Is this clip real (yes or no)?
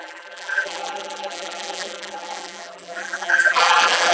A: no